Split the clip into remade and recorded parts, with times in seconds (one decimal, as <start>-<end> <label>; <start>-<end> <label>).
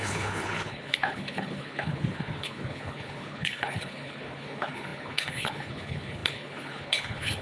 0.0-7.4 remade